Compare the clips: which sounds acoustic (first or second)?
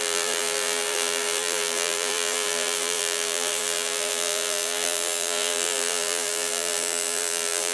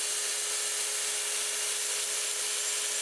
second